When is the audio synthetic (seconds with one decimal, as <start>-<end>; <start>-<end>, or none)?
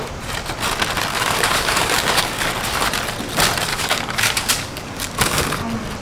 1.1-2.5; 3.7-5.5